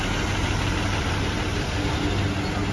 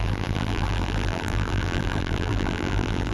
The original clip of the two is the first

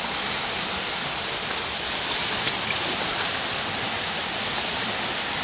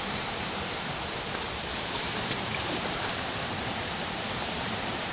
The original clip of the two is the first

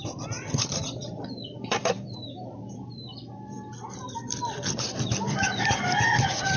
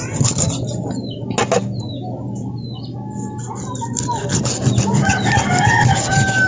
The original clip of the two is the second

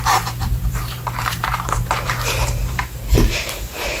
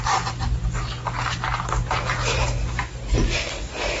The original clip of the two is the second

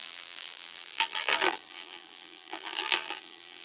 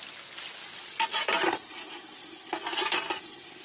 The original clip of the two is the second